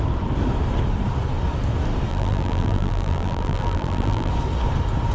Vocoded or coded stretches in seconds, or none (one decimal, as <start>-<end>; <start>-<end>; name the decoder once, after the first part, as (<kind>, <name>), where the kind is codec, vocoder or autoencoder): 2.1-4.3 (vocoder, BigVGAN v2)